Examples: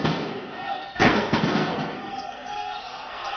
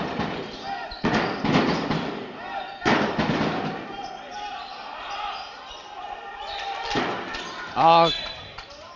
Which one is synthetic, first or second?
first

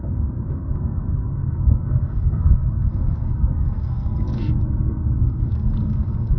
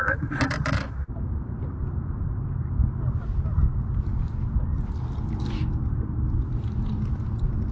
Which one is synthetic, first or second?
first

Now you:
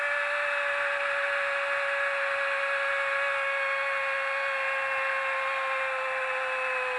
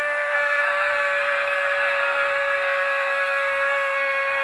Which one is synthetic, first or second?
second